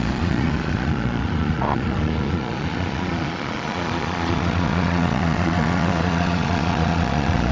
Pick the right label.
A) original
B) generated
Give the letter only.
B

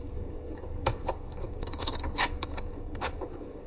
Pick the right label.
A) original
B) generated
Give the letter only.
B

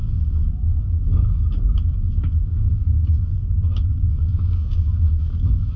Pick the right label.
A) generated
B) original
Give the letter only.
A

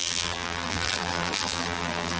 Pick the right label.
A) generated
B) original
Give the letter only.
A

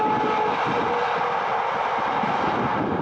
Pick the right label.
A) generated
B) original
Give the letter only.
B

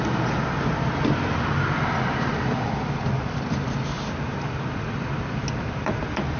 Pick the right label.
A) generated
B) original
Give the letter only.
B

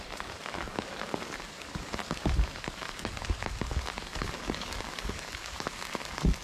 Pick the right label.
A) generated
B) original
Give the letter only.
A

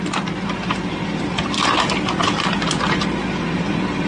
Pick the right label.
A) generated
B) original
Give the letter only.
B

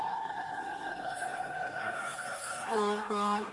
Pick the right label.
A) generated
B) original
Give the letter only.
A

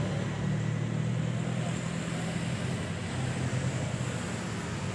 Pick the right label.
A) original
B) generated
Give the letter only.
A